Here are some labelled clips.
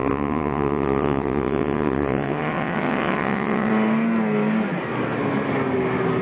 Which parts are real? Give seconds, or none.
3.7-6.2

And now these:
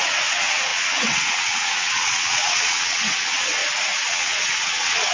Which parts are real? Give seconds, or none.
3.6-4.1

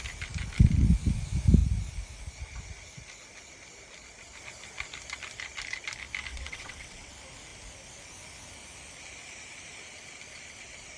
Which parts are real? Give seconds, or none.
0.0-6.3; 7.1-11.0